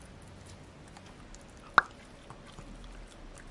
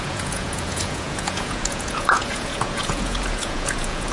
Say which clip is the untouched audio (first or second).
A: first